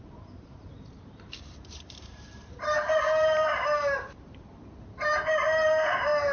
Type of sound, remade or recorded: remade